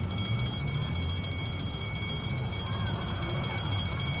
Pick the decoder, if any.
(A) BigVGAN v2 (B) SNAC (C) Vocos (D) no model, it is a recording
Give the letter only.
A